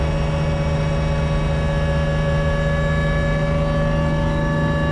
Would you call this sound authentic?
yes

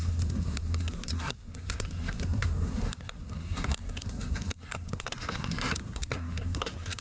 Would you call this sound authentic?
no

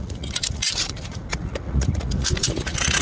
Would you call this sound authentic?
no